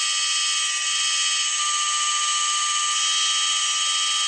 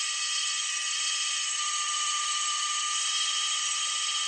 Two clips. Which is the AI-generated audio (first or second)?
second